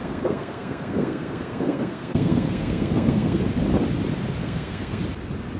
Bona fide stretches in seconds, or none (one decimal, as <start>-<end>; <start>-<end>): 3.4-4.4; 5.0-5.6